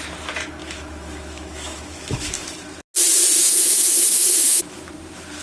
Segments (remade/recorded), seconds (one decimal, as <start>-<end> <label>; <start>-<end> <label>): 0.0-0.6 recorded; 0.6-2.6 remade; 2.6-3.3 recorded; 3.3-4.9 remade; 4.9-5.4 recorded